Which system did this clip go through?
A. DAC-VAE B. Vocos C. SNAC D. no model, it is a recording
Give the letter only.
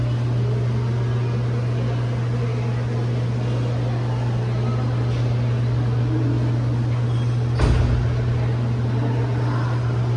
D